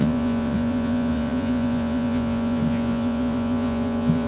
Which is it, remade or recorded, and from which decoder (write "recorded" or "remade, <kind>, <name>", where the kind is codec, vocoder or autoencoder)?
remade, vocoder, Vocos